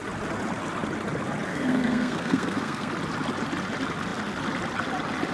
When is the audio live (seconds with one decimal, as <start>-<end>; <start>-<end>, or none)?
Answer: 0.0-1.5; 2.9-5.3